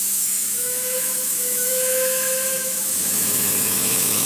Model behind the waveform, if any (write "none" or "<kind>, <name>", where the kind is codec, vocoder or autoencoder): autoencoder, DAC-VAE